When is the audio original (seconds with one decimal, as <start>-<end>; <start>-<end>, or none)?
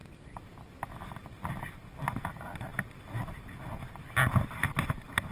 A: 0.0-5.3